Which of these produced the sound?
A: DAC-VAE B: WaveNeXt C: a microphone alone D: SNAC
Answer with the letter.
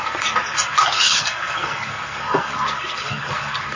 D